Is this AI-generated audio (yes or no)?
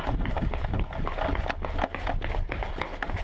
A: no